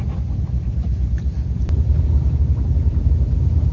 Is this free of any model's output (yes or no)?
no